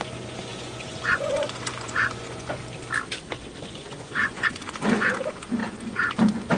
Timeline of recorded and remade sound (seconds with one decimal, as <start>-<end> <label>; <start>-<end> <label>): 0.0-2.6 remade; 2.6-3.6 recorded; 3.6-6.6 remade